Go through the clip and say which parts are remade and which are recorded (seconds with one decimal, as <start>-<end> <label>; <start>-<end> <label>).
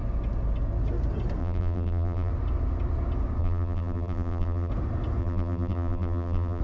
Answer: 0.0-1.4 recorded; 1.4-2.3 remade; 2.3-3.4 recorded; 3.4-4.7 remade; 4.7-5.2 recorded; 5.2-6.6 remade